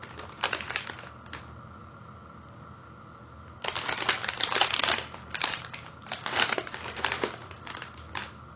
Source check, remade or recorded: recorded